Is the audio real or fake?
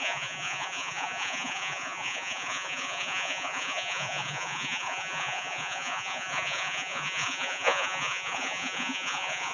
fake